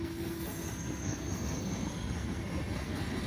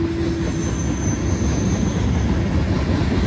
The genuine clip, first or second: second